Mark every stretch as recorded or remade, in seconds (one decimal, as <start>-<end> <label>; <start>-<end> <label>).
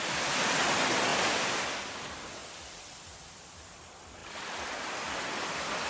0.0-1.1 recorded; 1.1-1.9 remade; 1.9-2.4 recorded; 2.4-3.0 remade; 3.0-5.9 recorded